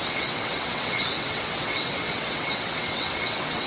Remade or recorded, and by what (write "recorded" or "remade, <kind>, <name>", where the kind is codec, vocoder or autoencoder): remade, vocoder, WaveNeXt